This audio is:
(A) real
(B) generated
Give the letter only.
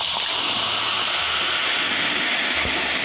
A